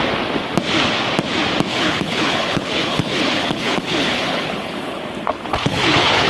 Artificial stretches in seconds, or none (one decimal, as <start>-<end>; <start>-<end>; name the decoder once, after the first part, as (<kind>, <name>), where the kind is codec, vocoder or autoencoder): 1.7-5.0 (codec, HILCodec); 5.5-6.3